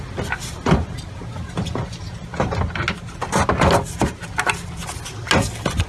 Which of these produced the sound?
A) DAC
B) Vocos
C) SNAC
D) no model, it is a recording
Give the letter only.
D